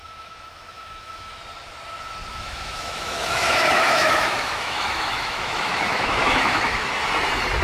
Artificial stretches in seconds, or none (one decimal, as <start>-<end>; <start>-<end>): 0.0-1.4; 2.3-6.9